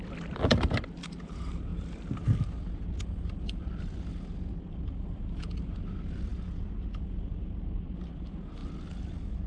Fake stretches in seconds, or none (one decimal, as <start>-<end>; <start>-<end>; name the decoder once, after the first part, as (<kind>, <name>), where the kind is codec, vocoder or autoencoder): none